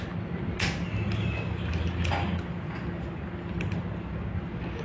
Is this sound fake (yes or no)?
no